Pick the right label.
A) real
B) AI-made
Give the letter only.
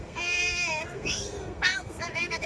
B